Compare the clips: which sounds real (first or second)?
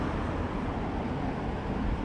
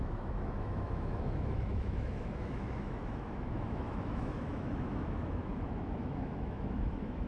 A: first